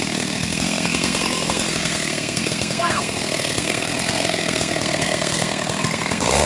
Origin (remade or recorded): remade